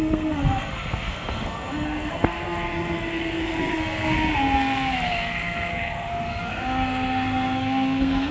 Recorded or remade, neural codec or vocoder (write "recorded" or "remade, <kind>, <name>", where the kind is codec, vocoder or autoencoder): remade, codec, SNAC